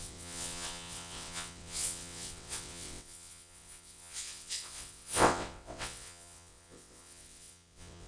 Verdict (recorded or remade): remade